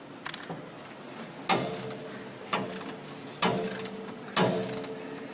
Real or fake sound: real